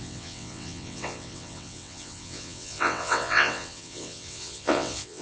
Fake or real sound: fake